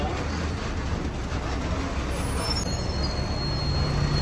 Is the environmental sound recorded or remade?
recorded